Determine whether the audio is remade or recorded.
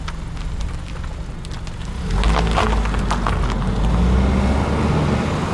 recorded